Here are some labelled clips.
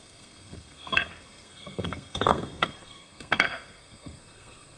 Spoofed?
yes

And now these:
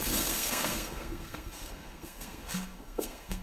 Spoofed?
yes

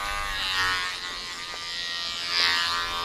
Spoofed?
no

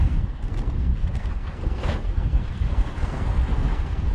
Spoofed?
yes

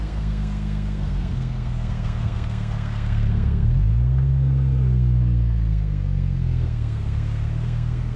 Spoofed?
yes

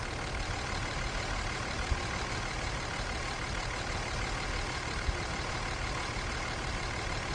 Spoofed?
no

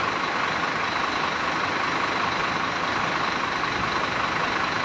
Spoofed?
no